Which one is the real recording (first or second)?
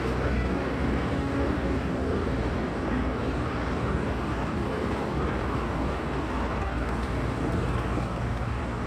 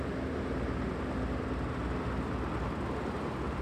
second